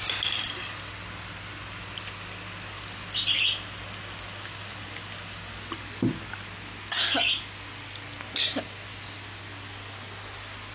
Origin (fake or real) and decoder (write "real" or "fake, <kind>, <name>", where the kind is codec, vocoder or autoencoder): real